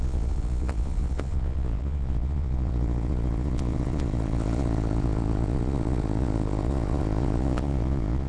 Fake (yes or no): yes